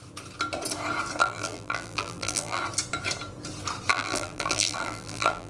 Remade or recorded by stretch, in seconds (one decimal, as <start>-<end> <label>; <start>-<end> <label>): 0.0-1.2 recorded; 1.2-2.6 remade; 2.6-3.9 recorded; 3.9-5.5 remade